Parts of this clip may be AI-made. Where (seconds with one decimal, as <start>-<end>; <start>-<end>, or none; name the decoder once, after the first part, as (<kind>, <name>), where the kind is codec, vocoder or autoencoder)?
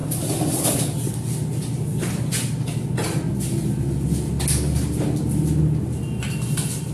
0.0-1.1 (vocoder, BigVGAN v2)